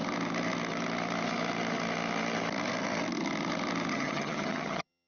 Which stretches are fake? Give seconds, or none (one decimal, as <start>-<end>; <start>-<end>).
3.9-5.1